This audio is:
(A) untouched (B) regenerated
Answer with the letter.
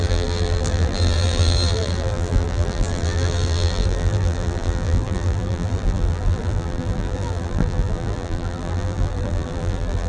B